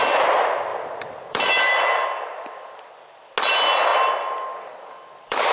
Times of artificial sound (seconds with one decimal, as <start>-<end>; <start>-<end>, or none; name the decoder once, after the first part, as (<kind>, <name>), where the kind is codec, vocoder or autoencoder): 0.7-1.9 (vocoder, BigVGAN v2); 3.9-5.5